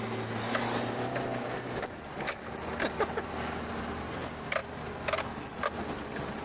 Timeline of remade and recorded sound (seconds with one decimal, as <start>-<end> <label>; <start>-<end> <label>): 0.0-6.4 recorded